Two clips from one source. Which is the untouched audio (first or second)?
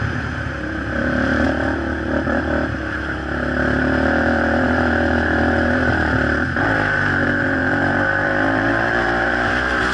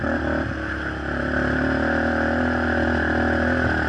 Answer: second